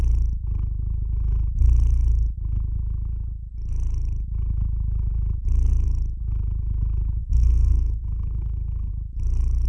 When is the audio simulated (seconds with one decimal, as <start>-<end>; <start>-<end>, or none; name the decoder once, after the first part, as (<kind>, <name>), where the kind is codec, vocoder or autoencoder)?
7.2-8.9 (codec, SNAC)